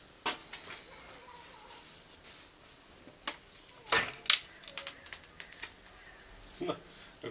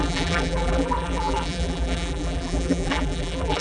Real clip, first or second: first